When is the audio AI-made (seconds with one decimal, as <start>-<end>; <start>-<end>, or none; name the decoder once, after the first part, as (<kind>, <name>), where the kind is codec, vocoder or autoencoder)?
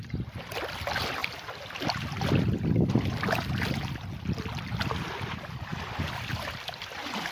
none